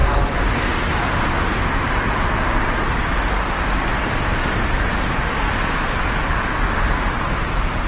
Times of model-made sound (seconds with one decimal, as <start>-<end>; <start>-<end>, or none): none